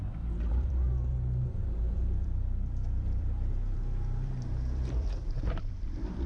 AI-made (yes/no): yes